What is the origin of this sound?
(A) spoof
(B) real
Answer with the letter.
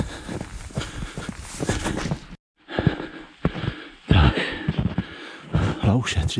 B